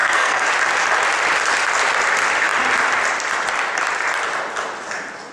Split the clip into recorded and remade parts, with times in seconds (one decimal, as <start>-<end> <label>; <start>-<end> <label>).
0.0-0.5 remade; 0.5-5.3 recorded